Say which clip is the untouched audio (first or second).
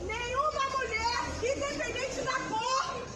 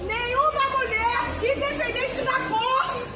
second